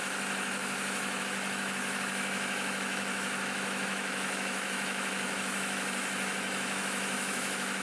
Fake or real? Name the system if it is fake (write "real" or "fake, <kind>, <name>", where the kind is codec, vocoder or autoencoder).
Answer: fake, autoencoder, DAC-VAE